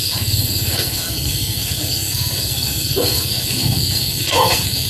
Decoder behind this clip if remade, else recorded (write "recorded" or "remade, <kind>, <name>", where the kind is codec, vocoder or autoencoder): remade, codec, SNAC